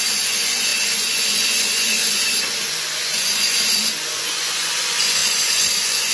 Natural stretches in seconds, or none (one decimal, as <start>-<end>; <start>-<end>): none